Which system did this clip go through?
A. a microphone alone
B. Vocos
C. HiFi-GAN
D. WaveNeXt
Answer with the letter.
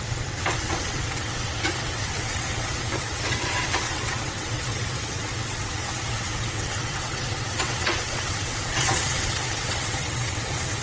D